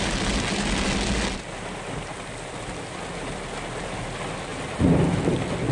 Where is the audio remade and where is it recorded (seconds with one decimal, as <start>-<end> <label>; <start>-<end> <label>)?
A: 0.0-5.7 recorded